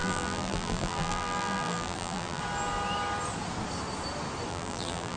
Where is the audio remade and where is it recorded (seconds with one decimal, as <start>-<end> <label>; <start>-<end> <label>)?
0.0-2.4 remade; 2.4-4.5 recorded; 4.5-5.2 remade